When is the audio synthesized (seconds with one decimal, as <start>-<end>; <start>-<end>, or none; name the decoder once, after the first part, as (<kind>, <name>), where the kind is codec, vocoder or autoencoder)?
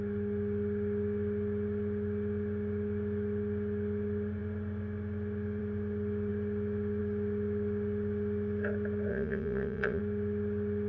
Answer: 9.1-10.0 (vocoder, Vocos)